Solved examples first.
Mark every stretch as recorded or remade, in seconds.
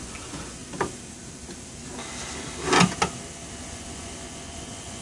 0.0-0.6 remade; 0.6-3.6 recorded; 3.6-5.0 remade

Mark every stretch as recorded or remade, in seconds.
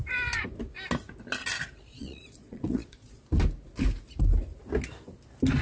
0.0-1.9 recorded; 1.9-3.2 remade; 3.2-5.6 recorded